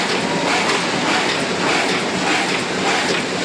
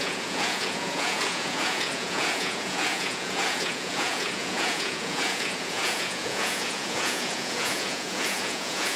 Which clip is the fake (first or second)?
second